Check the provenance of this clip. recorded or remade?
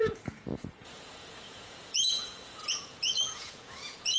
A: remade